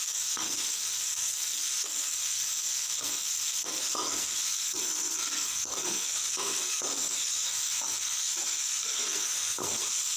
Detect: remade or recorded remade